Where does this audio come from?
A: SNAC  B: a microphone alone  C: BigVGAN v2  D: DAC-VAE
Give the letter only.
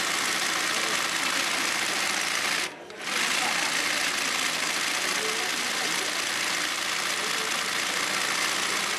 B